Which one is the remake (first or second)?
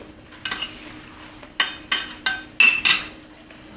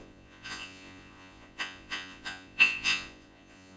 second